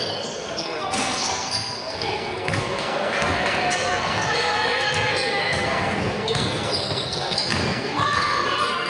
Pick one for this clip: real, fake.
fake